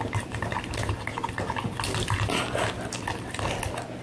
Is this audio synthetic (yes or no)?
no